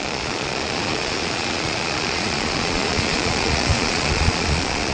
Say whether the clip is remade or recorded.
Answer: remade